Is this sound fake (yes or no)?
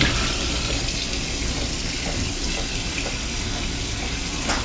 no